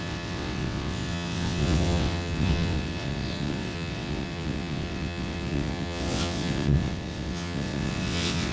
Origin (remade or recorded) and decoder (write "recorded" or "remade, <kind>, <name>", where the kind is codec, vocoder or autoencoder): remade, vocoder, WaveNeXt